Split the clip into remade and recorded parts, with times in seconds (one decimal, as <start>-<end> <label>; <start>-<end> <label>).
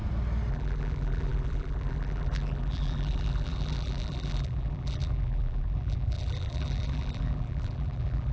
0.0-0.5 recorded; 0.5-8.3 remade